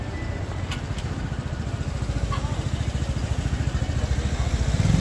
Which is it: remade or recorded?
recorded